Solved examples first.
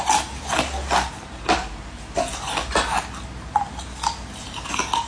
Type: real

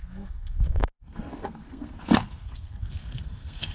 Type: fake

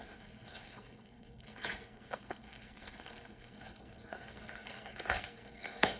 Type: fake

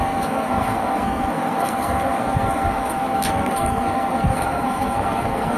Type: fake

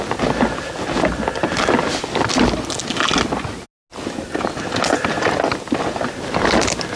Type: real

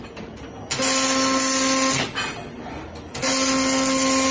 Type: real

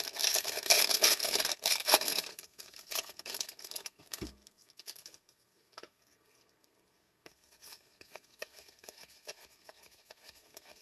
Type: fake